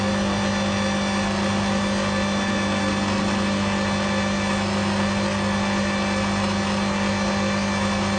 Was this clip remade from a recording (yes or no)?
no